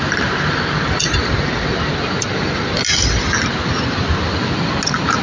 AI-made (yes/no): no